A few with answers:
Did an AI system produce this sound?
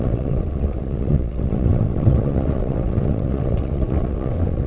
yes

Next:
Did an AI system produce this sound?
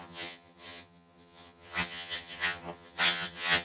yes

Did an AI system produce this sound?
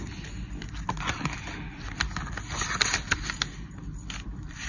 no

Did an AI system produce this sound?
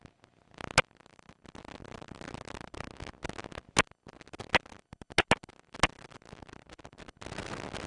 no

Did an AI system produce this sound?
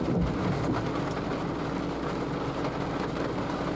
no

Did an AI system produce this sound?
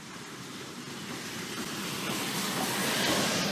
no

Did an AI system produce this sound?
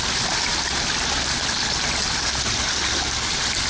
no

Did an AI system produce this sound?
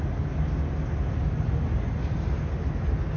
no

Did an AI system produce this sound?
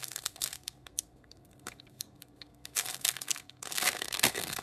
yes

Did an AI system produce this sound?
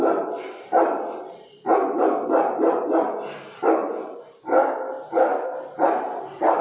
yes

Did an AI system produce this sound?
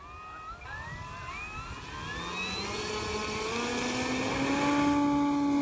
no